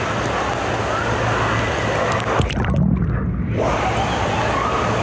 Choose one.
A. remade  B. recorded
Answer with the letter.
B